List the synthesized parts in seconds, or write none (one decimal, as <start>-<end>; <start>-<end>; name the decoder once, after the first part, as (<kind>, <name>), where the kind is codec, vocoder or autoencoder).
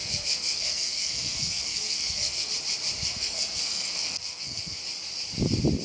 0.0-2.5 (codec, SNAC); 3.0-4.8